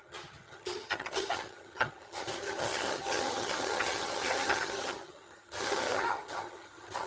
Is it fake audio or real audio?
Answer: fake